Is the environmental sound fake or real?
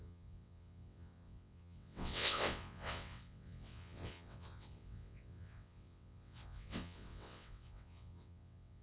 fake